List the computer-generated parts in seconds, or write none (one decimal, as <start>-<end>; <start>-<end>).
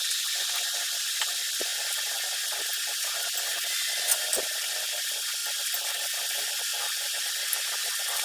none